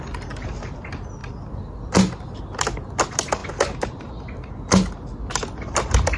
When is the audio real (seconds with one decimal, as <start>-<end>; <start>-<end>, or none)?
0.0-6.2